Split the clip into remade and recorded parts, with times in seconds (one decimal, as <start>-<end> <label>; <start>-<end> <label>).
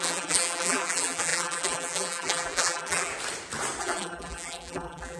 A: 0.0-3.1 remade; 3.1-3.8 recorded; 3.8-5.2 remade